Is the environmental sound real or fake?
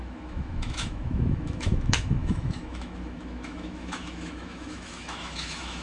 fake